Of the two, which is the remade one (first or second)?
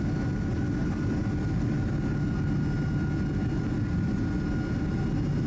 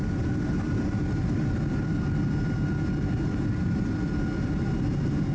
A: second